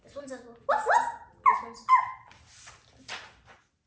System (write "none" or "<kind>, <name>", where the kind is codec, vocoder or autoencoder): none